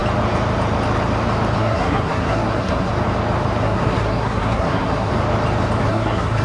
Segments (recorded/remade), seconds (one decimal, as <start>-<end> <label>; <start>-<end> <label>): 0.0-1.6 recorded; 1.6-2.9 remade; 2.9-3.6 recorded; 3.6-5.1 remade; 5.1-5.8 recorded; 5.8-6.4 remade